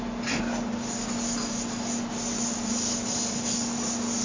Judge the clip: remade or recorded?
recorded